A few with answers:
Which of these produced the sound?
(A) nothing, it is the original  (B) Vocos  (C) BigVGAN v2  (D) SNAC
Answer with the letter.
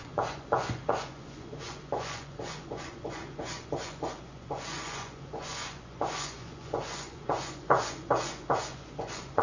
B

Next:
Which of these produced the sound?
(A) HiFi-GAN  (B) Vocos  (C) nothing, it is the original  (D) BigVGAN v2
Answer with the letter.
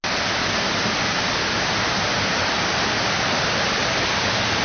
C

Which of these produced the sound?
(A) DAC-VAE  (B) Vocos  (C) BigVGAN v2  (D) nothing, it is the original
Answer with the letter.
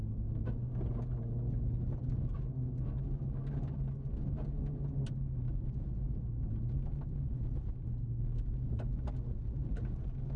D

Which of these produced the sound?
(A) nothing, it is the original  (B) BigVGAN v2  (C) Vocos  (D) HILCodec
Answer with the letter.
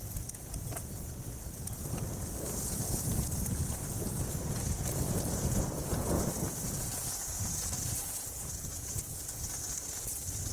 C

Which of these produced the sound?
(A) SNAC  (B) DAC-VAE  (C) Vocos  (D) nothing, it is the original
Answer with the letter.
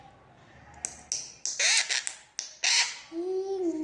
D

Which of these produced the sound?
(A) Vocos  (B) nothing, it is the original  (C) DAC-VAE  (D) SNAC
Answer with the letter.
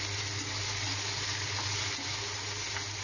B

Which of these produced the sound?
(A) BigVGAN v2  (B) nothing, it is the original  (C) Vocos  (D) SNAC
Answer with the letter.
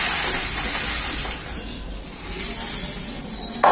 B